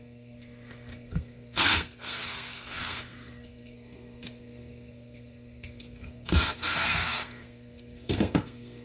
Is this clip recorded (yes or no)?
no